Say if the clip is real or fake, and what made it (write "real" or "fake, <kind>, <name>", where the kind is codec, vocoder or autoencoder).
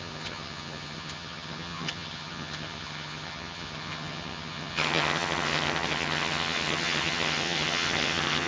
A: fake, vocoder, HiFi-GAN